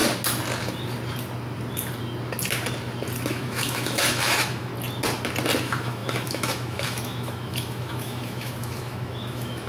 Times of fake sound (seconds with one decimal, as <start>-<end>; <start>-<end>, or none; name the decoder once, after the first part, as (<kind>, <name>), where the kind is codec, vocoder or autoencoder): 3.3-4.7 (autoencoder, DAC-VAE); 5.6-9.7